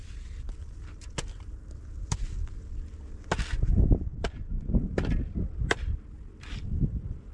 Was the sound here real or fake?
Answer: real